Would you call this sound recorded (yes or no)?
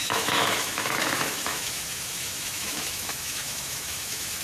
no